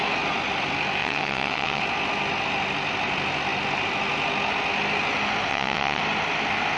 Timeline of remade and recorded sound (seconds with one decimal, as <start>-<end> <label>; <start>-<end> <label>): 0.0-1.0 recorded; 1.0-1.8 remade; 1.8-5.5 recorded; 5.5-6.0 remade; 6.0-6.8 recorded